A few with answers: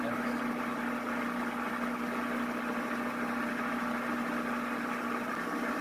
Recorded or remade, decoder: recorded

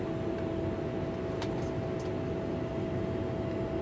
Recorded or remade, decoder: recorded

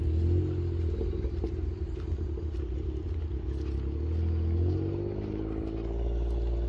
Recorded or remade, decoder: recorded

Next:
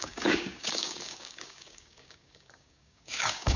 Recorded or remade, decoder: remade, codec, DAC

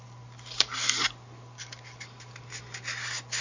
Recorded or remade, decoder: recorded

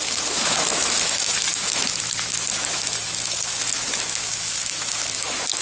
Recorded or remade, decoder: remade, autoencoder, DAC-VAE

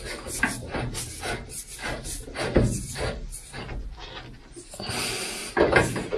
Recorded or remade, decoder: recorded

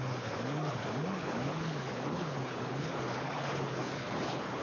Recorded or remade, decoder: remade, codec, HILCodec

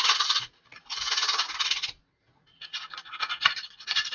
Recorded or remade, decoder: remade, vocoder, Vocos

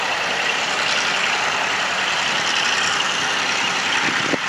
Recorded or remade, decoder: remade, vocoder, BigVGAN v2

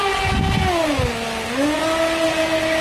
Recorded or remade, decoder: recorded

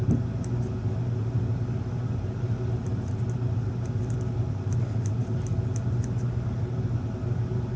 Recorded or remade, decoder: remade, vocoder, BigVGAN v2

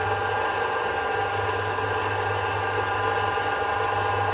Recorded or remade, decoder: recorded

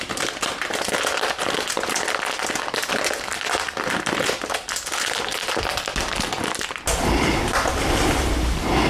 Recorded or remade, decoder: recorded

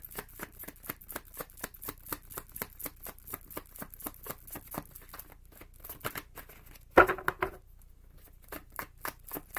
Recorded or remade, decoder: recorded